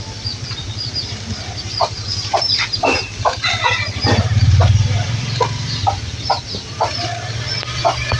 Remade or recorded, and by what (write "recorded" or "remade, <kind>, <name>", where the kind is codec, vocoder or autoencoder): remade, vocoder, BigVGAN v2